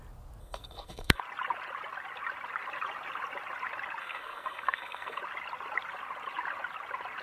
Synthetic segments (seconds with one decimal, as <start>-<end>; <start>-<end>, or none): 0.4-1.2; 4.0-5.2